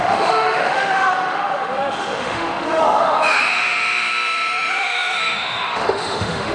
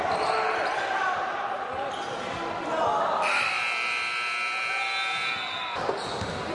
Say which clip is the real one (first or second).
second